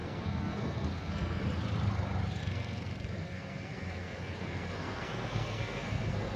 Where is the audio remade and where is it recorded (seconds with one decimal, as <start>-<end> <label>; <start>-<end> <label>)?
0.0-1.4 remade; 1.4-2.4 recorded; 2.4-6.4 remade